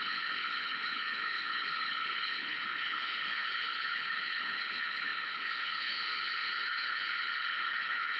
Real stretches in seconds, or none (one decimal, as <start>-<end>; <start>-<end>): none